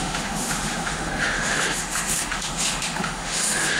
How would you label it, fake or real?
fake